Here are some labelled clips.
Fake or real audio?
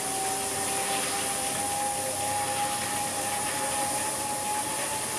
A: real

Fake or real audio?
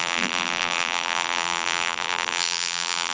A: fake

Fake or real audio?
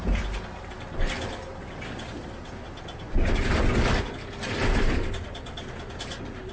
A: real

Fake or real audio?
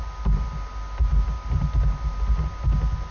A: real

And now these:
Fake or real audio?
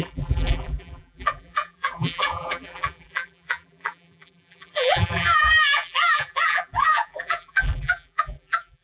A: fake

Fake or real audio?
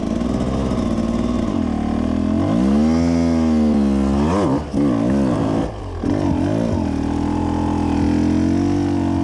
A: real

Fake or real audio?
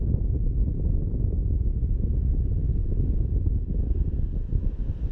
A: real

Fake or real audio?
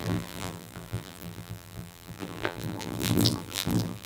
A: fake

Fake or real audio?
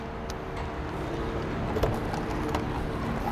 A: real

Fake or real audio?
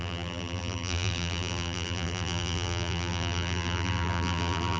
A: fake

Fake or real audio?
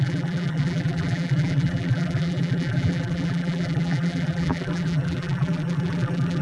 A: fake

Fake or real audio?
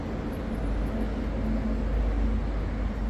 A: real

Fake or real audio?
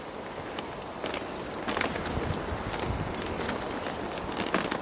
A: real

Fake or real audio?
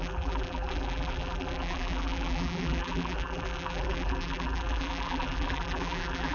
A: fake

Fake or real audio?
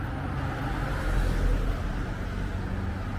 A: real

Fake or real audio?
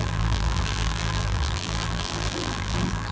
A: fake